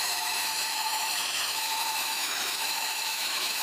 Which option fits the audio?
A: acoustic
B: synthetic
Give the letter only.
B